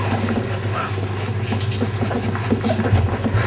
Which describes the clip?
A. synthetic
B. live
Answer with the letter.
B